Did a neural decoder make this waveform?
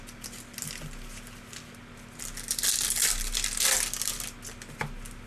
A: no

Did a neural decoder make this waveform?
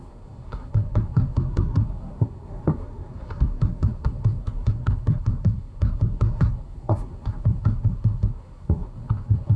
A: yes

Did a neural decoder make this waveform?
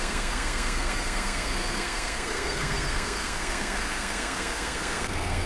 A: yes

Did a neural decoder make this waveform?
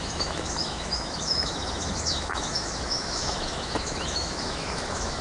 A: yes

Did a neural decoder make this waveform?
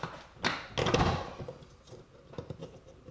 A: no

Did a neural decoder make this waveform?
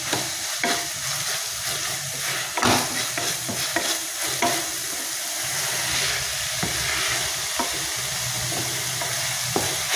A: no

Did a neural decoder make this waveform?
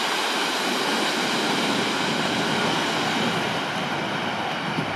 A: no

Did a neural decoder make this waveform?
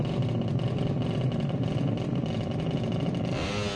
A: no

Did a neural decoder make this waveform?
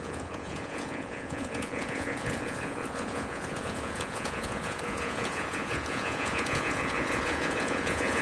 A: yes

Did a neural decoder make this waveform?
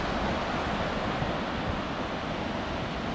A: no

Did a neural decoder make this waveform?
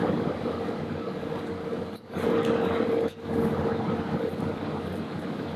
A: yes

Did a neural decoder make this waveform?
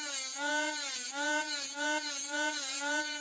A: yes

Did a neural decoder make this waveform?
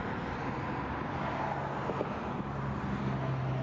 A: no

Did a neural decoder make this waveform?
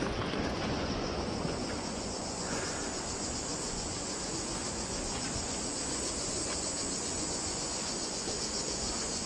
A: yes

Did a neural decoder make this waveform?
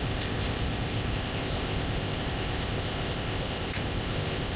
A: yes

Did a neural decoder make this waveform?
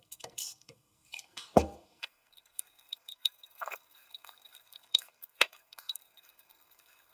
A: yes